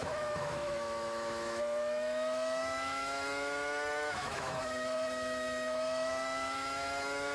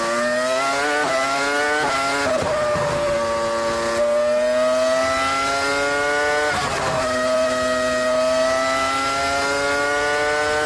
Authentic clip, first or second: second